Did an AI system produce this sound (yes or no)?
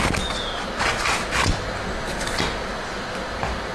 no